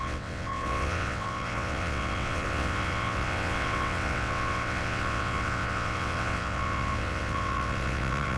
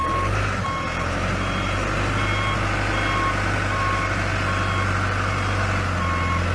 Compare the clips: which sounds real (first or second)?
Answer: second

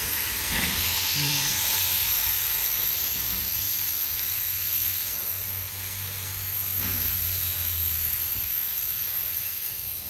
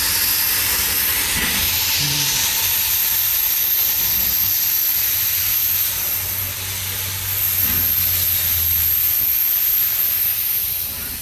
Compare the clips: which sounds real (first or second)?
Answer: second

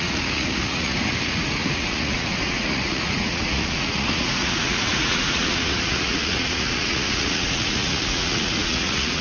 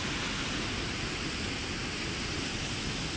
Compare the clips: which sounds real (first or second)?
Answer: second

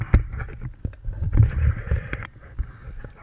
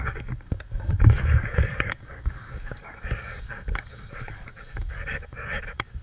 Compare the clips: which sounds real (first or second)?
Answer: first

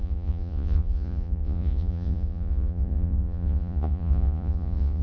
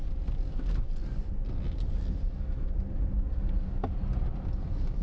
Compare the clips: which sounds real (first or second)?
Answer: second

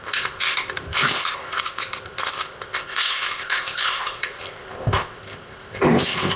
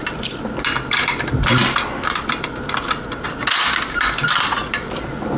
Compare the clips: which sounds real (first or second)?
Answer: second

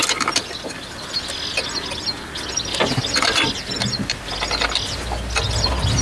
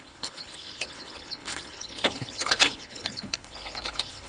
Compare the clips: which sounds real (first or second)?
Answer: first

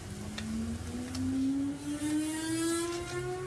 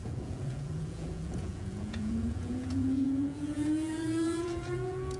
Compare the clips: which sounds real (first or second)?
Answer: first